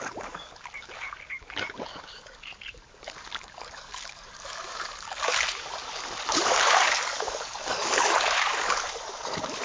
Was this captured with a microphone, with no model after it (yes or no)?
no